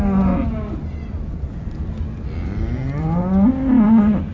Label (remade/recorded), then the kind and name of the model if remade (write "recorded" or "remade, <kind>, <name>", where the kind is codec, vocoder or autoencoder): recorded